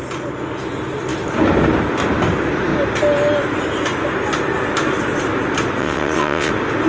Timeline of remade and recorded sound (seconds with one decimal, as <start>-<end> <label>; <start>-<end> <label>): 0.0-5.8 recorded; 5.8-6.5 remade; 6.5-6.9 recorded